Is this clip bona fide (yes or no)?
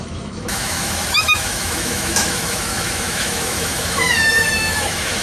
no